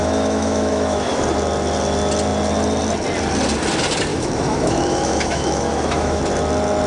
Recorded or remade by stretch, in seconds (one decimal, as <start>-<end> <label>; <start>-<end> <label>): 0.0-1.2 remade; 1.2-4.1 recorded; 4.1-6.2 remade; 6.2-6.9 recorded